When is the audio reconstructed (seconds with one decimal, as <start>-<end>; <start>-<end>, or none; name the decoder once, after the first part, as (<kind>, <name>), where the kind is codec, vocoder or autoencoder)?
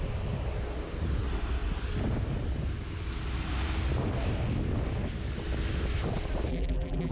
6.5-7.1 (vocoder, BigVGAN v2)